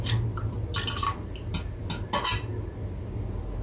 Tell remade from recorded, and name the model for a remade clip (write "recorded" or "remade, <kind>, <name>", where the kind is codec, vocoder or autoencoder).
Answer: recorded